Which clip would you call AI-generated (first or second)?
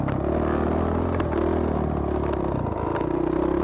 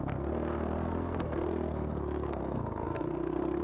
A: second